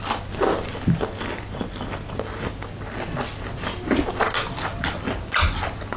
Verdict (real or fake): real